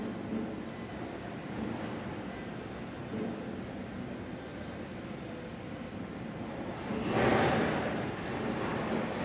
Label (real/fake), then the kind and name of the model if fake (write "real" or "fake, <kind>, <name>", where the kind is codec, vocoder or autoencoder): real